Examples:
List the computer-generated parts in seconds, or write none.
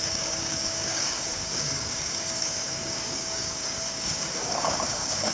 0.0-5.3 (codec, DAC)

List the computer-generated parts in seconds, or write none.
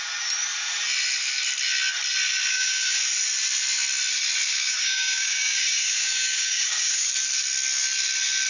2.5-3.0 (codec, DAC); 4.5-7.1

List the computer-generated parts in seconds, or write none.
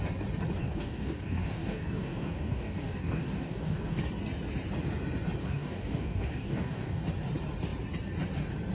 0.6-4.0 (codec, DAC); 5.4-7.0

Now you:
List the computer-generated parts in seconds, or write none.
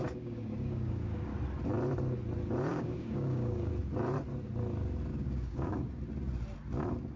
0.0-1.3 (codec, DAC); 2.7-3.7; 5.1-6.0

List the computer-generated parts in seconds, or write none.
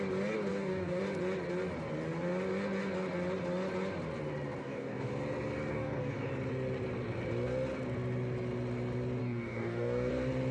0.5-1.0 (codec, DAC); 4.6-5.1; 5.7-6.3; 9.2-10.1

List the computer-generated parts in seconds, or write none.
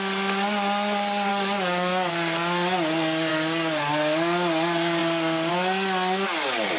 1.3-2.1 (codec, DAC); 3.3-3.9